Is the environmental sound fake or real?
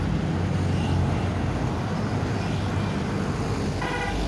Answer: real